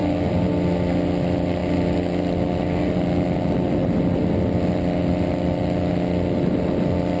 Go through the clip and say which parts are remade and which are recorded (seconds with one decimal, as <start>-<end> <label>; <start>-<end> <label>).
0.0-7.2 recorded